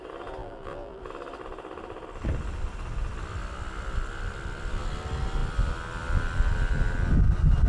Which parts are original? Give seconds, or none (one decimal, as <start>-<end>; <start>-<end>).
0.0-0.4; 1.0-7.7